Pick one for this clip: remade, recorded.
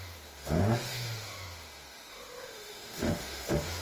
remade